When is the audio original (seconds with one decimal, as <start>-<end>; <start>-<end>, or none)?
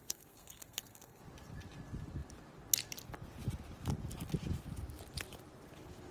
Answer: 1.2-6.1